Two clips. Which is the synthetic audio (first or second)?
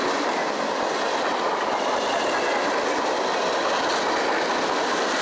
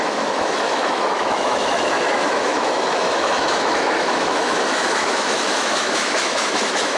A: second